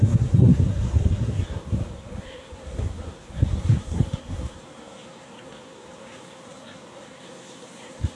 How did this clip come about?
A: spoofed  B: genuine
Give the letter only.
A